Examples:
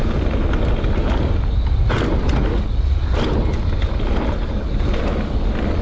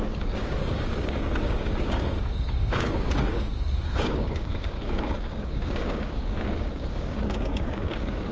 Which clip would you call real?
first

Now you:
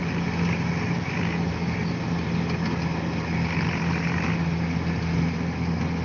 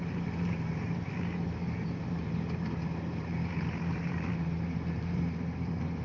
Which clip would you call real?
first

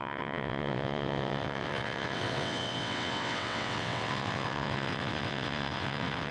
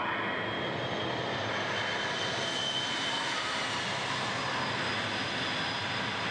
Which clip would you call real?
second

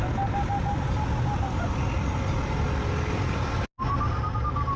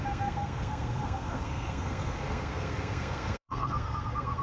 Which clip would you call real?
first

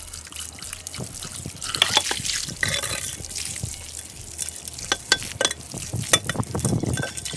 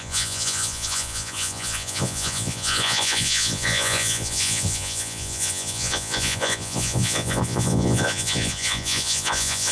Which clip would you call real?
first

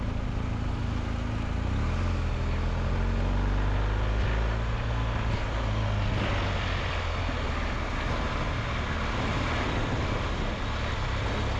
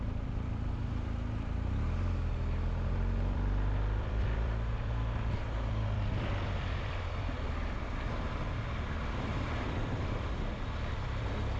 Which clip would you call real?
first